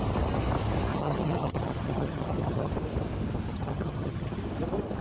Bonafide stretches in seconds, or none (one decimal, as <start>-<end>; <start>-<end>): 0.0-0.9; 2.7-3.5; 4.4-5.0